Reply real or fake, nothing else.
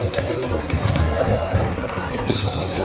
fake